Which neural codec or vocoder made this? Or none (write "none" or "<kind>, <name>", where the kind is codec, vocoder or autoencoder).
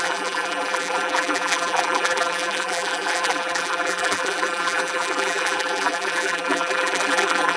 vocoder, BigVGAN v2